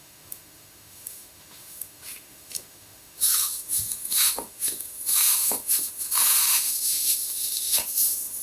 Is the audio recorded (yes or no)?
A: no